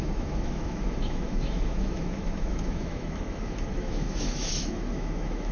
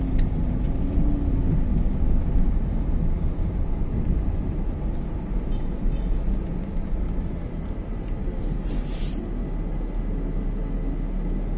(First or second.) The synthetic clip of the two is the first